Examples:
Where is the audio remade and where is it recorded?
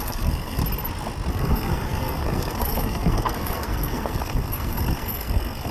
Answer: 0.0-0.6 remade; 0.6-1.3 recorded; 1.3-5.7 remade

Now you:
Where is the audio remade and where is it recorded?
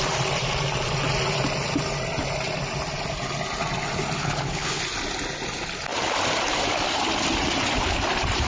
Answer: 0.0-4.2 recorded; 4.2-4.8 remade; 4.8-8.5 recorded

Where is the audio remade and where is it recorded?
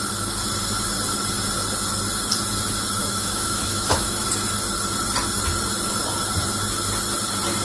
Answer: 0.0-3.0 recorded; 3.0-4.2 remade; 4.2-7.6 recorded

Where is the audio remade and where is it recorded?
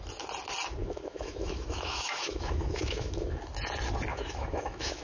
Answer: 0.0-0.8 recorded; 0.8-3.4 remade; 3.4-4.1 recorded; 4.1-5.0 remade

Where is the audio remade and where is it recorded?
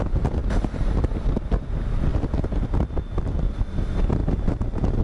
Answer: 0.0-0.4 recorded; 0.4-1.4 remade; 1.4-5.0 recorded